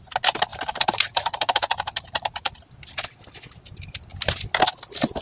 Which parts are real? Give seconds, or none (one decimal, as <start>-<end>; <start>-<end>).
0.0-0.5; 2.6-5.2